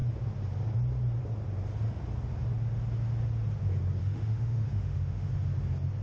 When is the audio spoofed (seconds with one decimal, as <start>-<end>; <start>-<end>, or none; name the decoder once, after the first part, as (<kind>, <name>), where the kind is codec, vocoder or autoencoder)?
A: 4.0-5.3 (autoencoder, DAC-VAE)